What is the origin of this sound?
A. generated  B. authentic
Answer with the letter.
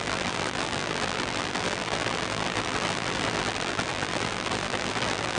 A